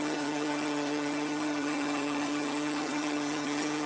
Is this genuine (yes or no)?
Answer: no